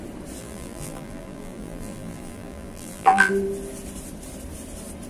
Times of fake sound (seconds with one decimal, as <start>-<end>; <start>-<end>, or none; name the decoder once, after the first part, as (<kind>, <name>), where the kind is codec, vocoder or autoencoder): 0.4-3.3 (vocoder, BigVGAN v2)